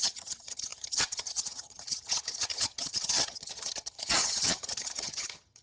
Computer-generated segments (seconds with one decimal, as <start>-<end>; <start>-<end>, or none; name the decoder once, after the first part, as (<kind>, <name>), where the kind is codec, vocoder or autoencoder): 0.0-5.6 (vocoder, HiFi-GAN)